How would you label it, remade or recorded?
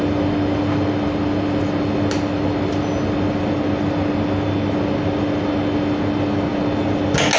recorded